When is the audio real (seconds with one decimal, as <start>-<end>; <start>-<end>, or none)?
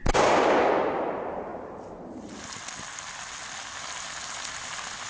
0.0-5.1